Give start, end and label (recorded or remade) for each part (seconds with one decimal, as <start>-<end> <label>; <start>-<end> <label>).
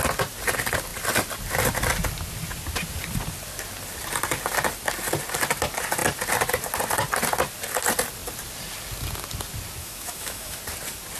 0.0-9.8 recorded; 9.8-10.6 remade; 10.6-11.2 recorded